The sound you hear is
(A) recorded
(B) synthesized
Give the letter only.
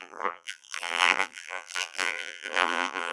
B